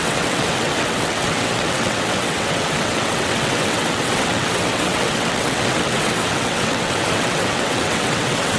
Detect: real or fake fake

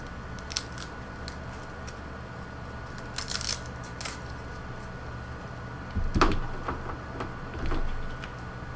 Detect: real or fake real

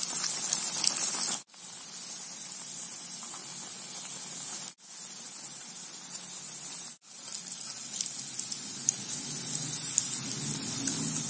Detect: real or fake real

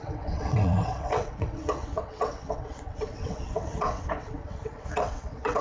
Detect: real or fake fake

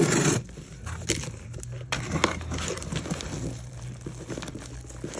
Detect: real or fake real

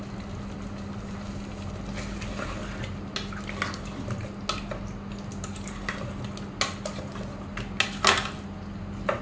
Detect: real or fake real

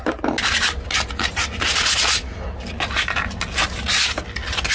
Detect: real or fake real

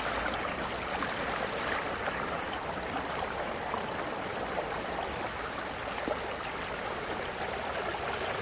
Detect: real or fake real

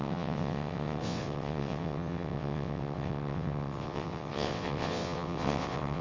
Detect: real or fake fake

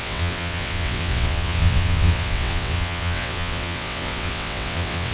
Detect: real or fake fake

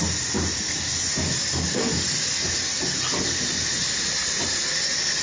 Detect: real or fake real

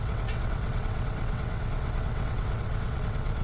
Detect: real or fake fake